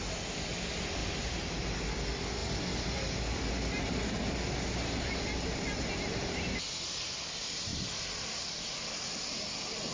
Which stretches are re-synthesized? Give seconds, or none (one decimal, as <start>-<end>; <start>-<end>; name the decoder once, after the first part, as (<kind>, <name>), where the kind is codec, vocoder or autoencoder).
none

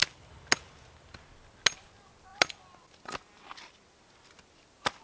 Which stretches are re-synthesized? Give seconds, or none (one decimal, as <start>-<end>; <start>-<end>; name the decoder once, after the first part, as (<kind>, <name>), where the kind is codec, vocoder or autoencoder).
none